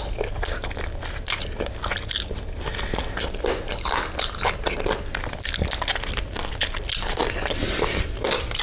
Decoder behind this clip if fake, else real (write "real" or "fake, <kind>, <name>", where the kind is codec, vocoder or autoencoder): real